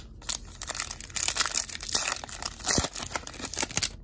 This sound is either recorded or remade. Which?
recorded